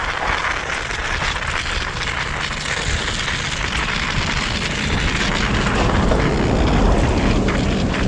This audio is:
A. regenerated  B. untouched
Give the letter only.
B